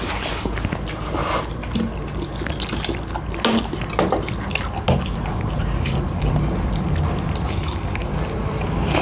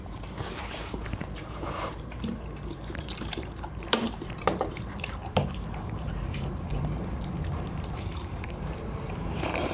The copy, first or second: second